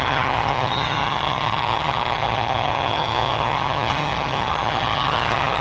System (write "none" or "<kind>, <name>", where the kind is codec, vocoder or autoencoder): vocoder, HiFi-GAN